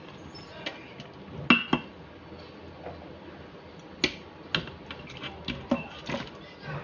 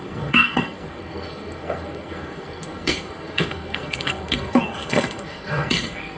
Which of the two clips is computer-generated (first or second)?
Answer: second